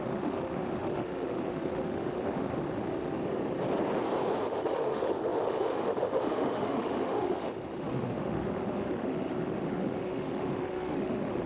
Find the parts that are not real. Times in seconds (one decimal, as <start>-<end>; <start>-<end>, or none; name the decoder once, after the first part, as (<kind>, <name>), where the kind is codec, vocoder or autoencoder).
0.0-3.2 (autoencoder, DAC-VAE); 4.4-11.5